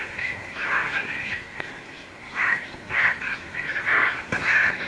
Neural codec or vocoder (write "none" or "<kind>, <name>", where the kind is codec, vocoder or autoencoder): codec, SNAC